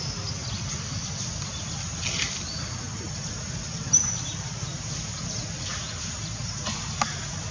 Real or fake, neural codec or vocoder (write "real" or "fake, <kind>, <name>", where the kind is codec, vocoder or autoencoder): real